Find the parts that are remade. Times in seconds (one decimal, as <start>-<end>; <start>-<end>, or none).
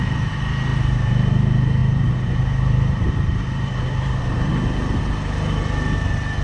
0.7-1.3; 1.8-4.5